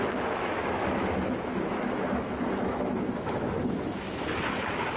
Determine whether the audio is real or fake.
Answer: fake